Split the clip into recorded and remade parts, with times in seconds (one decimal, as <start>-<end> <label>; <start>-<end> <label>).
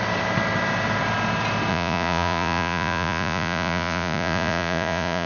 0.0-1.7 recorded; 1.7-5.3 remade